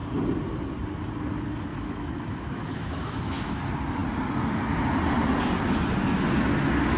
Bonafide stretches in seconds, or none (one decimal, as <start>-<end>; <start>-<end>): 0.0-1.7; 3.6-7.0